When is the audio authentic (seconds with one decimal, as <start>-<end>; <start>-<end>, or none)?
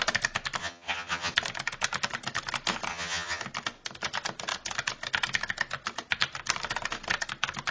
0.0-0.6; 1.3-2.9; 3.4-7.7